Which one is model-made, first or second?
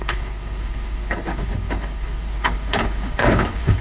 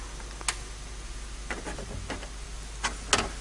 first